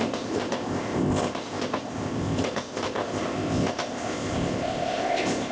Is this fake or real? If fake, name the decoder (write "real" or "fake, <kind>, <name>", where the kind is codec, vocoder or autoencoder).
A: fake, codec, ZipCodec